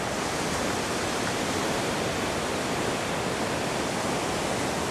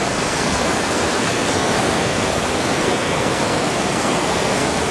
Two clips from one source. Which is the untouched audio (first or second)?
first